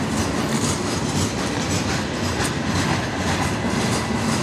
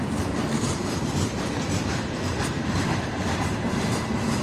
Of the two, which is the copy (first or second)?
second